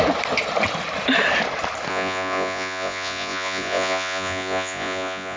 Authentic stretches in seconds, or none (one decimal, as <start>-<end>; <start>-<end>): 0.0-1.9